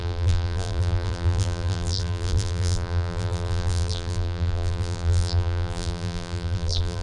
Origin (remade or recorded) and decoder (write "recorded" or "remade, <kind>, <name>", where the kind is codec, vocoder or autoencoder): remade, vocoder, BigVGAN v2